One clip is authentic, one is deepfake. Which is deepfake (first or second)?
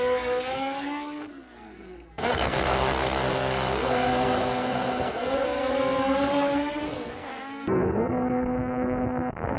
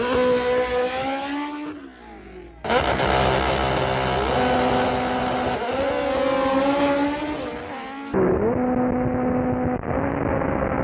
first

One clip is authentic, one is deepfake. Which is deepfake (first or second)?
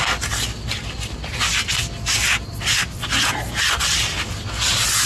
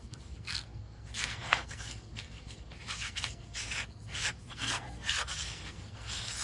second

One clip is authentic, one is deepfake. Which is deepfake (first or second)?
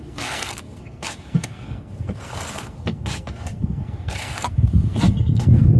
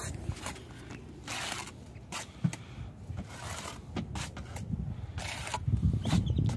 first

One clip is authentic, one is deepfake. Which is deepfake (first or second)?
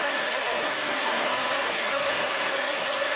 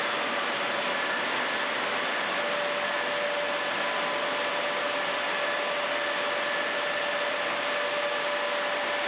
first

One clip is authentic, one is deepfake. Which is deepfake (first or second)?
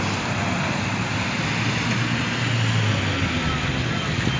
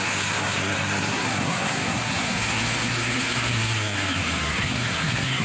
second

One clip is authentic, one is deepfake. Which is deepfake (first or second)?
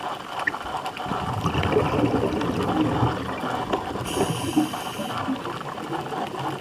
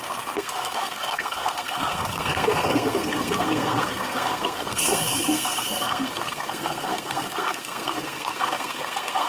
second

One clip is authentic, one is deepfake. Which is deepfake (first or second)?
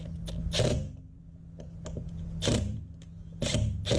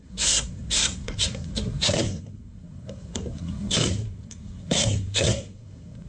second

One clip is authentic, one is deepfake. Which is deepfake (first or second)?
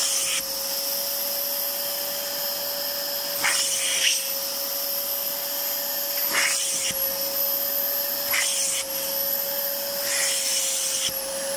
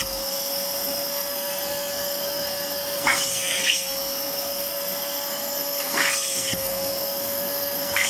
second